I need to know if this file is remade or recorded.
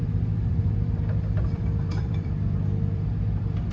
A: remade